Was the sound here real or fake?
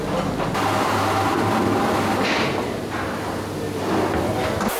real